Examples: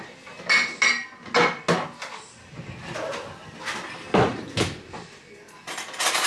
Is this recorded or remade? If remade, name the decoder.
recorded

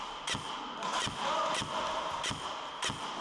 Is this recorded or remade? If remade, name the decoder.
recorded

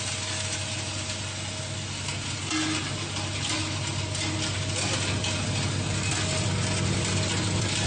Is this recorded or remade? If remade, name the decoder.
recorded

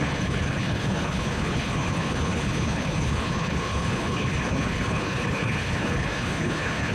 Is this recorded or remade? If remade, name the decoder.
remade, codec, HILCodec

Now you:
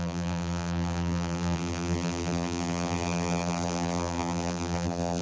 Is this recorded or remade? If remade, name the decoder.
remade, vocoder, BigVGAN v2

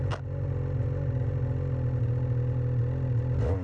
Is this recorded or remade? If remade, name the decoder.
recorded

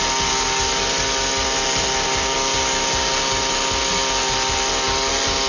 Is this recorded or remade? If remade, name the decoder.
recorded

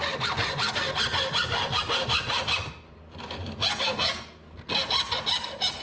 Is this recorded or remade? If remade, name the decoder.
recorded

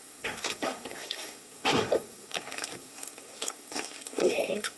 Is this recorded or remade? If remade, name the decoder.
remade, codec, SNAC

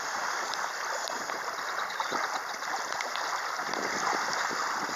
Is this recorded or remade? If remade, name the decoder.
recorded